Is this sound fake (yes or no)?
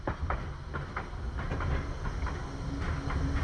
no